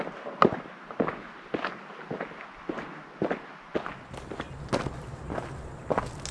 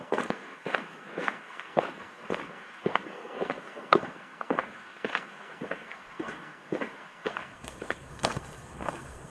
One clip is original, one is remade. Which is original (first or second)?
first